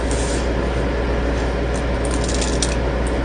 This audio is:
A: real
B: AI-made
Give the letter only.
A